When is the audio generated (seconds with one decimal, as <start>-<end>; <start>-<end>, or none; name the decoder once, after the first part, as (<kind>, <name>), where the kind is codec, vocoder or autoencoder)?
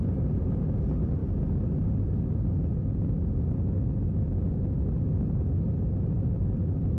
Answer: 5.7-6.6 (vocoder, BigVGAN v2)